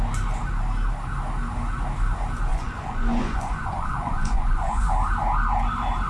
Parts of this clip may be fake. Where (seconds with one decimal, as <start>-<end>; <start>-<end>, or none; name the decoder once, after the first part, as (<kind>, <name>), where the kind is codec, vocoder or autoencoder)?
2.5-4.9 (vocoder, Vocos)